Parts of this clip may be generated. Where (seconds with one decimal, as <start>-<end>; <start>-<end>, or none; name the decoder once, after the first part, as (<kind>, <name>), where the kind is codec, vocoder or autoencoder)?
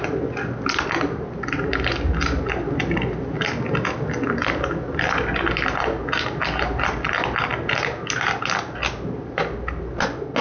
none